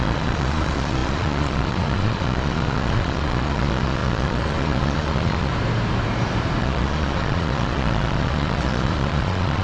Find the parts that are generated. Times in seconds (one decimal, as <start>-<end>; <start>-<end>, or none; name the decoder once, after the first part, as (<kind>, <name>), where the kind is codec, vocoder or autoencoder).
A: 0.0-5.5 (vocoder, Vocos); 6.6-9.6